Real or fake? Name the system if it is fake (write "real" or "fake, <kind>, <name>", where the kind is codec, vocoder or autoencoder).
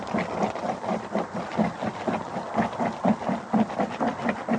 real